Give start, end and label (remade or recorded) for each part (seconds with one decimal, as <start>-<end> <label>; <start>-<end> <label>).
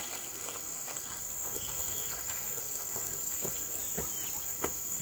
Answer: 0.0-3.8 remade; 3.8-4.4 recorded; 4.4-5.0 remade